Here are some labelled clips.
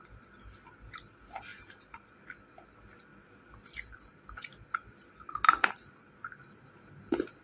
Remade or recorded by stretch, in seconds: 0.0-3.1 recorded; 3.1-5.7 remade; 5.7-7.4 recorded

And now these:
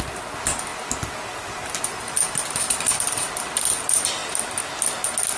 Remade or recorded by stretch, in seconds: 0.0-5.4 recorded